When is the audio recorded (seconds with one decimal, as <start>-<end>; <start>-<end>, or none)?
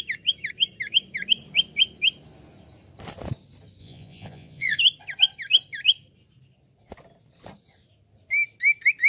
0.0-3.8; 4.8-9.1